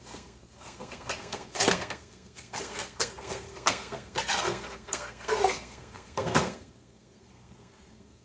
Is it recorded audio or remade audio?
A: remade